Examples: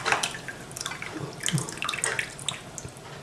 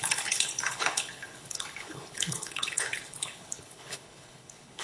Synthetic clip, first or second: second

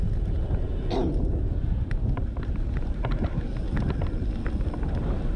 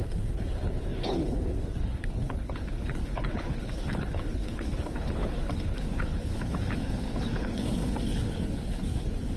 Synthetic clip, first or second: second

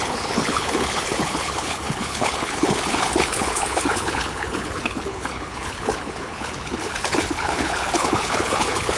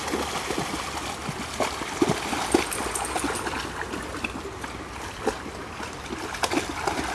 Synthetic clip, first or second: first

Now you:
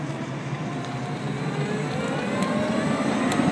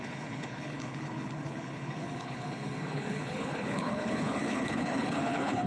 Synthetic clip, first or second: second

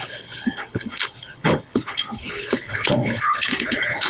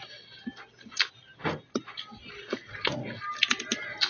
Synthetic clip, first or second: first